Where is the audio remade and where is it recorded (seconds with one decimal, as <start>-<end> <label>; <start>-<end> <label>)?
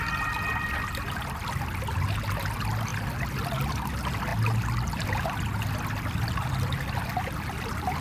0.0-2.9 recorded; 2.9-3.7 remade; 3.7-8.0 recorded